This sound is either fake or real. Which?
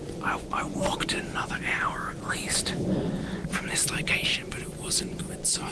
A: fake